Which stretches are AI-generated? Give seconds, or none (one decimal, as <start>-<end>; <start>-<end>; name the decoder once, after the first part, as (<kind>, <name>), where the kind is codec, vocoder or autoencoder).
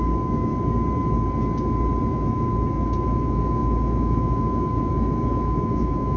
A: 0.0-0.5 (autoencoder, DAC-VAE); 2.1-6.2